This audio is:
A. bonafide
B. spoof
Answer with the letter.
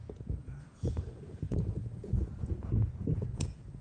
B